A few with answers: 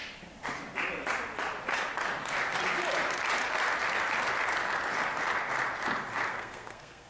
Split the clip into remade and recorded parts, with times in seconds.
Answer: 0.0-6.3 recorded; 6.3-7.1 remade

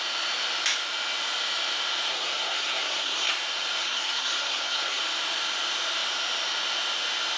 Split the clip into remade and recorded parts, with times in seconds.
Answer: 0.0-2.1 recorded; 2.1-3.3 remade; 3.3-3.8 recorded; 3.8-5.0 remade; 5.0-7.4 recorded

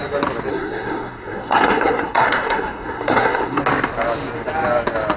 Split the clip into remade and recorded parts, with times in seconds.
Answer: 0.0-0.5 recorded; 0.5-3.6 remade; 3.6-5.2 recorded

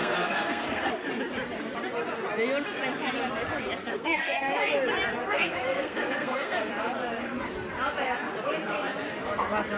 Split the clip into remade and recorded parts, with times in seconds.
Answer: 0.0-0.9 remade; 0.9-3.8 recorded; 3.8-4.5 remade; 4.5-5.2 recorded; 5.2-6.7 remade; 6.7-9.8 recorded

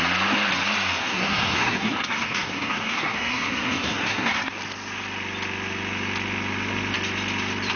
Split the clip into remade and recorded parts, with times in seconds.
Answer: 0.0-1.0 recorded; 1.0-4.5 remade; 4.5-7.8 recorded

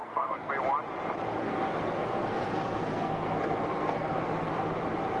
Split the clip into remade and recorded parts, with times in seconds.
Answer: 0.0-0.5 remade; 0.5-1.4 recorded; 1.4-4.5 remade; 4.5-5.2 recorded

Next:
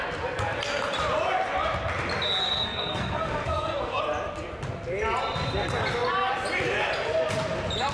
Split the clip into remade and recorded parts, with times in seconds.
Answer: 0.0-2.4 recorded; 2.4-4.0 remade; 4.0-7.9 recorded